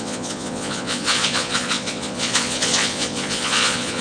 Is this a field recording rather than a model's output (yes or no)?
no